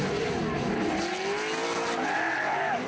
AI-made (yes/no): no